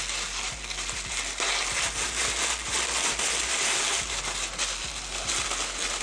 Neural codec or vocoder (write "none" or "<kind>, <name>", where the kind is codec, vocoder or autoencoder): none